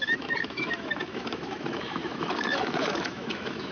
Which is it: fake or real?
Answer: fake